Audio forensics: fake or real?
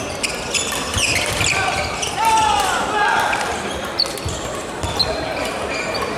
real